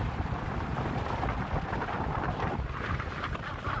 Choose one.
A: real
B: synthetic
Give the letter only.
A